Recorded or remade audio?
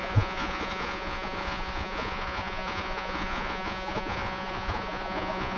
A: remade